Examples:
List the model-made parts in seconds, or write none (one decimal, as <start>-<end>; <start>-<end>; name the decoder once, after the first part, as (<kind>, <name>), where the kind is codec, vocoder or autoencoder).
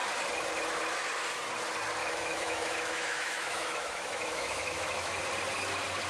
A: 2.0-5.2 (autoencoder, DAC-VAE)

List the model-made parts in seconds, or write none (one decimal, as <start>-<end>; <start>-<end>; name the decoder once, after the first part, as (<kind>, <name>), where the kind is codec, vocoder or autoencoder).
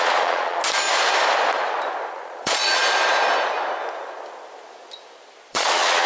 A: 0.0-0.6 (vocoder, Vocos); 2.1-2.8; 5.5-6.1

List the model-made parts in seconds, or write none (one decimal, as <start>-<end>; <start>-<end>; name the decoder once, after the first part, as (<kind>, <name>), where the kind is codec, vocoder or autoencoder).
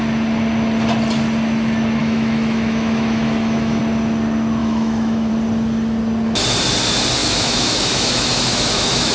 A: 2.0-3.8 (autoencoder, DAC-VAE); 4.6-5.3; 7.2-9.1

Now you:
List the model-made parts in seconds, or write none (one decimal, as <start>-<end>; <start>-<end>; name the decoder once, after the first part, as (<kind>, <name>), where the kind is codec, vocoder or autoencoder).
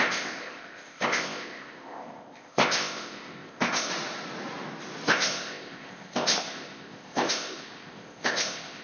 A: 0.0-3.9 (codec, ZipCodec); 5.1-8.8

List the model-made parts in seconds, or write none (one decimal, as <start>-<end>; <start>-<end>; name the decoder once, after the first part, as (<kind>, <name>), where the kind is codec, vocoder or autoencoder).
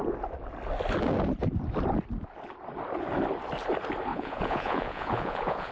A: 4.1-5.7 (vocoder, Vocos)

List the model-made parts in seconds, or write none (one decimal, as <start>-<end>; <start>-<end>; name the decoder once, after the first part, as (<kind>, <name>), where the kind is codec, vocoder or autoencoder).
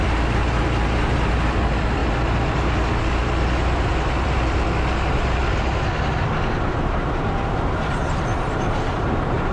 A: 8.3-9.5 (vocoder, BigVGAN v2)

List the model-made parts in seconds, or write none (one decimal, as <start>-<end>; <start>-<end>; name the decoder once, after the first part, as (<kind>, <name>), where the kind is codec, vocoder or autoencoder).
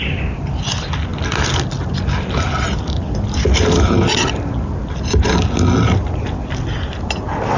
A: none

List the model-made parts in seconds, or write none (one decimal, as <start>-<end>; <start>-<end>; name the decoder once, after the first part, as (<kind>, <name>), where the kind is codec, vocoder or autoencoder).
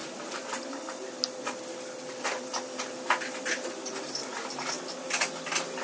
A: none